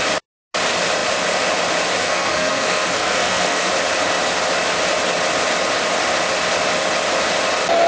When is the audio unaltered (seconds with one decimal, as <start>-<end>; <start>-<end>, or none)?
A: 0.0-2.0; 3.7-7.9